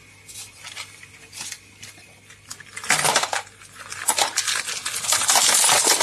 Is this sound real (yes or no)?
yes